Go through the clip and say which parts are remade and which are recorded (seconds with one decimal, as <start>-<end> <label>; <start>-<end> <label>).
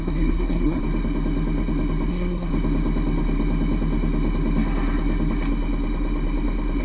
0.0-0.8 remade; 0.8-2.1 recorded; 2.1-2.5 remade; 2.5-6.8 recorded